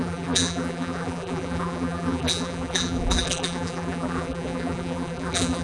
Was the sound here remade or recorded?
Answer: remade